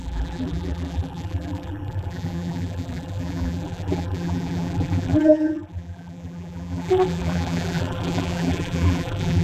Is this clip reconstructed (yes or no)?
yes